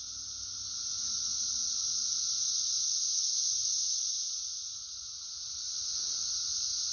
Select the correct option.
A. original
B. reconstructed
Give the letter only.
A